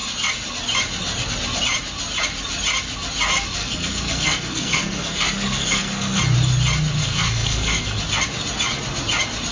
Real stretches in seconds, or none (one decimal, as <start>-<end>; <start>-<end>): 0.0-3.6; 6.2-7.0; 8.0-9.5